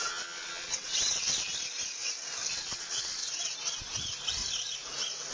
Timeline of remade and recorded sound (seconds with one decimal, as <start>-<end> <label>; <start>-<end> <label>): 0.0-1.5 remade; 1.5-2.5 recorded; 2.5-3.2 remade; 3.2-5.3 recorded